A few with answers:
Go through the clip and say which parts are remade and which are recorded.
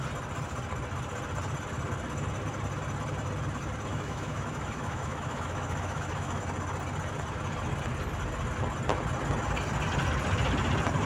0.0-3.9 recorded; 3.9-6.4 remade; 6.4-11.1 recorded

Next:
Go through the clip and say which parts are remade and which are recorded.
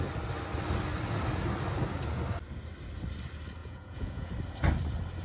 0.0-3.6 recorded; 3.6-4.3 remade; 4.3-5.2 recorded